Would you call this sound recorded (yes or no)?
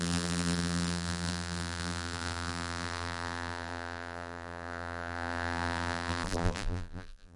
no